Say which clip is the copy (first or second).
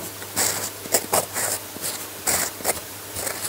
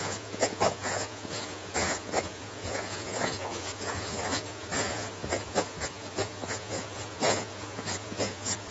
second